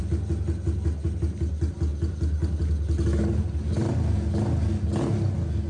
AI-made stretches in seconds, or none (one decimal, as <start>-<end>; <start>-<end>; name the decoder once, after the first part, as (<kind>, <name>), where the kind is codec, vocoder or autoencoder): none